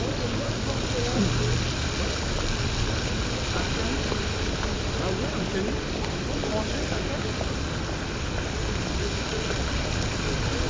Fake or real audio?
real